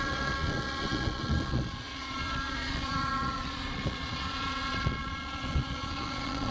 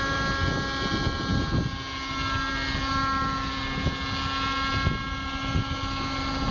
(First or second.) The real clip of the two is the second